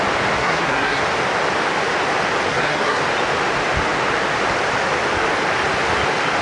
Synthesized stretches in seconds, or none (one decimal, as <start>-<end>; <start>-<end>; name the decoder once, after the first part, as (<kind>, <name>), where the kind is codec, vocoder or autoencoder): 0.4-1.0 (codec, SNAC); 2.5-3.0

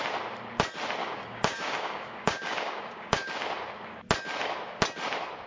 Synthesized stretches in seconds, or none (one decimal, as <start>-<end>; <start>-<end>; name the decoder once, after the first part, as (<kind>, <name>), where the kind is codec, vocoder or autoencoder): 1.0-3.3 (codec, DAC)

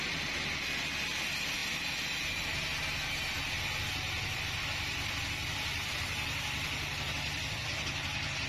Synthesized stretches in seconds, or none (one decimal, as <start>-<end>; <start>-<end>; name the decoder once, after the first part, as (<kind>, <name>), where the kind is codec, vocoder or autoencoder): none